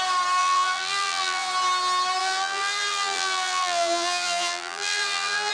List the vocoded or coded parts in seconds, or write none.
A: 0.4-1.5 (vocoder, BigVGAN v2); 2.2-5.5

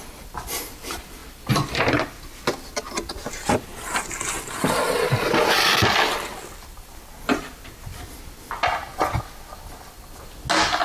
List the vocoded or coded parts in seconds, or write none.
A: none

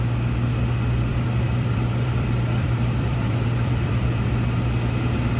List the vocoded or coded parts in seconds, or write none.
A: 1.1-4.3 (vocoder, BigVGAN v2)

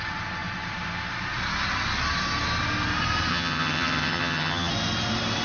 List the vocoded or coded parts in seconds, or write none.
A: 3.3-4.7 (vocoder, HiFi-GAN)

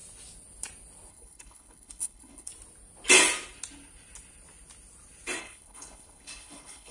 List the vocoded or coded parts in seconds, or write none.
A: 1.1-2.5 (codec, HILCodec); 5.4-6.9

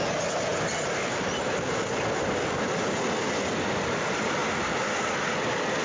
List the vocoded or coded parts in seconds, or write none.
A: none

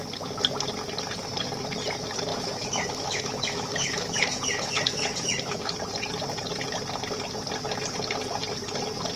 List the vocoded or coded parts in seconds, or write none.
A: 2.3-5.7 (autoencoder, DAC-VAE)